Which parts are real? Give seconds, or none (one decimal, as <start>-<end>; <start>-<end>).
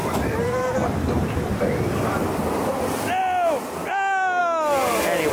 0.0-5.3